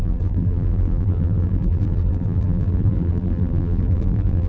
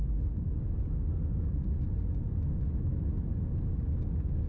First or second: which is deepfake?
first